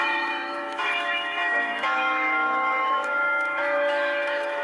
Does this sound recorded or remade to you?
remade